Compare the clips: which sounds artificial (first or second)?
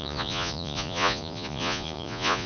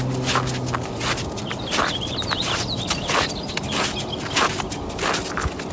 first